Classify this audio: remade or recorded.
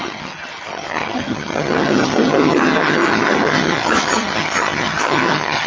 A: remade